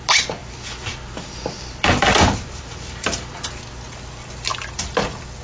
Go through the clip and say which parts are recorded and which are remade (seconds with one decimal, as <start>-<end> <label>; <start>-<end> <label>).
0.0-0.4 recorded; 0.4-3.6 remade; 3.6-4.5 recorded; 4.5-5.0 remade; 5.0-5.4 recorded